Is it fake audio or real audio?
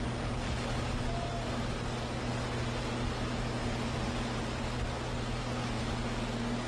real